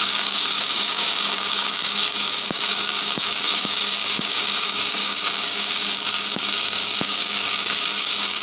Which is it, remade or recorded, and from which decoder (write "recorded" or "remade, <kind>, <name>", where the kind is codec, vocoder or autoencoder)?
remade, codec, DAC